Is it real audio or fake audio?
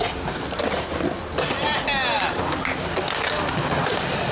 real